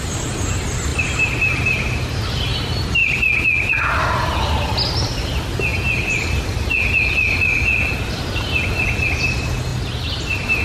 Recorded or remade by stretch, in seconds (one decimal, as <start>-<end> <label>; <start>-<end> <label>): 0.0-0.9 recorded; 0.9-2.6 remade; 2.6-9.7 recorded; 9.7-10.6 remade